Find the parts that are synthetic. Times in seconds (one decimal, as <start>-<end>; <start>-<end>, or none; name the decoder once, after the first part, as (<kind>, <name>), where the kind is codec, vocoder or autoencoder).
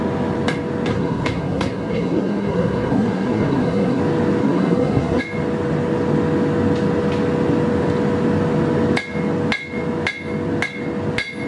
0.9-4.0 (codec, SNAC); 4.4-5.2